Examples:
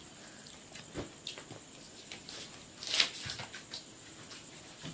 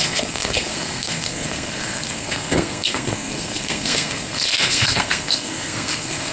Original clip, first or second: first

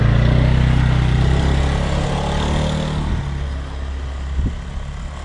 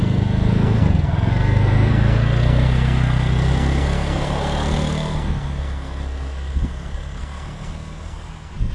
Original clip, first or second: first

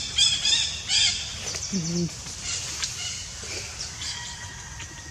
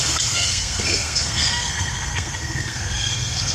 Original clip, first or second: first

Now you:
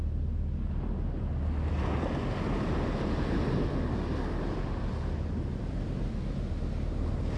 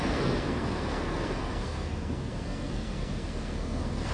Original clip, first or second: first